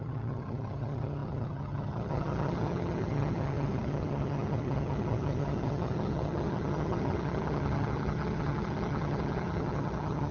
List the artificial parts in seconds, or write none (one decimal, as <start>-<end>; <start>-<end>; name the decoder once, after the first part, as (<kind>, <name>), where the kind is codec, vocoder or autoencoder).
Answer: 0.0-10.3 (vocoder, HiFi-GAN)